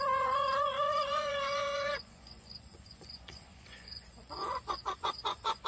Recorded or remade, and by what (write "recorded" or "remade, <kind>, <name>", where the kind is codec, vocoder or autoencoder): remade, vocoder, Vocos